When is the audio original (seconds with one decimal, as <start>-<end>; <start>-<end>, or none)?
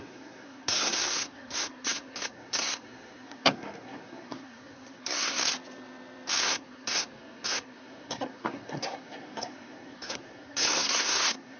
5.4-6.4